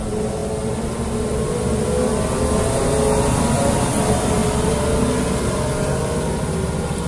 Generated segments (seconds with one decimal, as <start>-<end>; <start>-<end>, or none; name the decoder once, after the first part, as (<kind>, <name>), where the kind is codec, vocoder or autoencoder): none